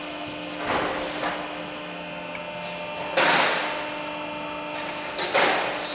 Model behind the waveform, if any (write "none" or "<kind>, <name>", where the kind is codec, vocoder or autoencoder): none